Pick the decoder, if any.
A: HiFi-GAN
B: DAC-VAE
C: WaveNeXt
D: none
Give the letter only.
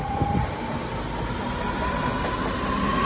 D